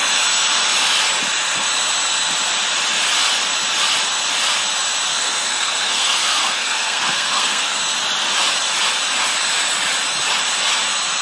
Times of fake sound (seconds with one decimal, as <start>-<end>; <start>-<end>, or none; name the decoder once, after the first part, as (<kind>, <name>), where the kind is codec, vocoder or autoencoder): 5.1-7.8 (codec, SNAC)